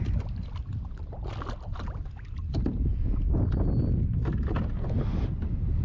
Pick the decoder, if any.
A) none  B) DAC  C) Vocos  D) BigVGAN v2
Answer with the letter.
A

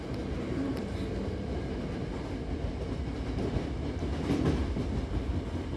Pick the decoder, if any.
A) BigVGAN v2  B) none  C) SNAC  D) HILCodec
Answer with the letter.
B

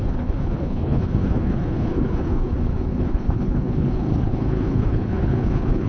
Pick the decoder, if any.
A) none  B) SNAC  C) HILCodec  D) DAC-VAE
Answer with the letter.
C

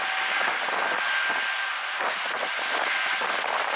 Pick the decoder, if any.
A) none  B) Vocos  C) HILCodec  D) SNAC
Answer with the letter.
A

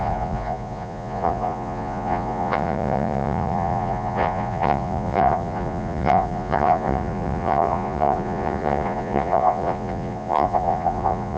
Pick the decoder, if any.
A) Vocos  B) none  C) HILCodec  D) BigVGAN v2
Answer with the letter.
A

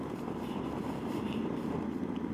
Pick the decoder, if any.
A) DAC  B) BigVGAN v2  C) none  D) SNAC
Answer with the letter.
C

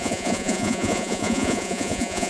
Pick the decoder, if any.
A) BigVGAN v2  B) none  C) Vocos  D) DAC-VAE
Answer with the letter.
C